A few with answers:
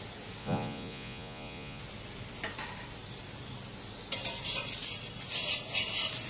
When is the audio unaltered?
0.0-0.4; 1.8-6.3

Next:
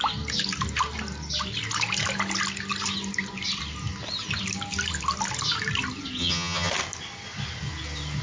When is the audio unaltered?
0.0-6.2; 6.7-8.2

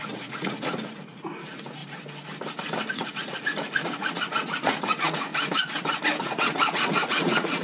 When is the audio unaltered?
1.8-2.9; 5.3-6.2